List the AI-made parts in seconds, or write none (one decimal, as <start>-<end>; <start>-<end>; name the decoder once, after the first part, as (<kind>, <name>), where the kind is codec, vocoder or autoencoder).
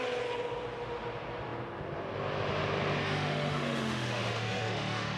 3.0-5.2 (autoencoder, DAC-VAE)